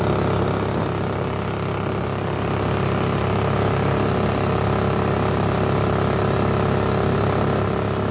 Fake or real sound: real